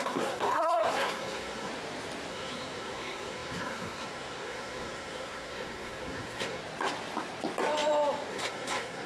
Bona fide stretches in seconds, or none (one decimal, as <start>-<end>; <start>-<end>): 1.7-2.3; 6.6-8.3

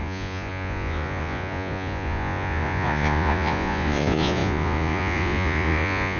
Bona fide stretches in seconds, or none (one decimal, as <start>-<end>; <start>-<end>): none

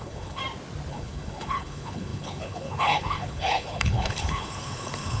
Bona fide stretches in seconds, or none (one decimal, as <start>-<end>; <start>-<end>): 0.4-0.9